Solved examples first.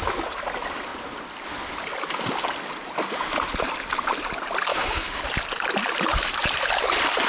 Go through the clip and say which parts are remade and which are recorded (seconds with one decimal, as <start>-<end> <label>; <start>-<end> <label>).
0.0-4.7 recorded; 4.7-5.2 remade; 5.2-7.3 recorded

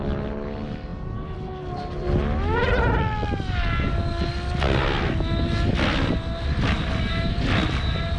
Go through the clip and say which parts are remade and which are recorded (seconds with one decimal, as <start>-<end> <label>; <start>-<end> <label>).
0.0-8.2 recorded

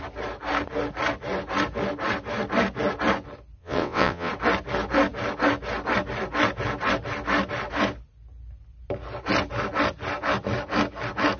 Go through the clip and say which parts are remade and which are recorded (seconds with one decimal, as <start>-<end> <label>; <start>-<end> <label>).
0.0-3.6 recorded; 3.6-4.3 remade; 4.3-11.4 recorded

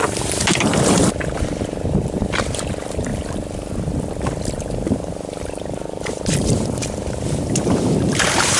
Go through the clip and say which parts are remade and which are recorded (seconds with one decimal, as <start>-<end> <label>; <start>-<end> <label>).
0.0-3.1 remade; 3.1-4.9 recorded; 4.9-8.6 remade

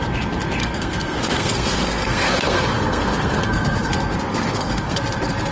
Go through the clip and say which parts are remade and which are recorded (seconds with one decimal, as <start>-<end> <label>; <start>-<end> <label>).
0.0-0.6 recorded; 0.6-3.9 remade; 3.9-4.3 recorded; 4.3-5.0 remade; 5.0-5.5 recorded

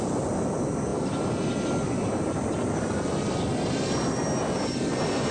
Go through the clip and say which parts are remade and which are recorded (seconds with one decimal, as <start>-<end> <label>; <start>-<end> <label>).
0.0-5.3 recorded

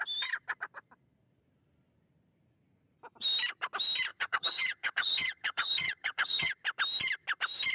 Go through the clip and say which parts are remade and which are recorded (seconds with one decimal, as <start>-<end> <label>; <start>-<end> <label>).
0.0-4.1 recorded; 4.1-6.5 remade; 6.5-7.7 recorded